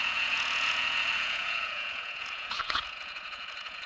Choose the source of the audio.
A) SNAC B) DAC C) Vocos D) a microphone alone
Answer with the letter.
C